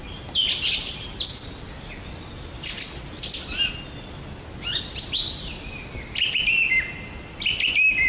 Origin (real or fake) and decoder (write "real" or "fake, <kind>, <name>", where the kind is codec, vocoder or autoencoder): real